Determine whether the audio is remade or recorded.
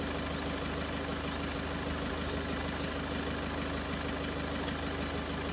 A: recorded